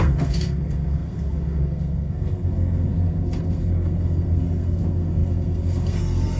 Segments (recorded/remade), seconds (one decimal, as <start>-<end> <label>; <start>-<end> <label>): 0.0-6.4 remade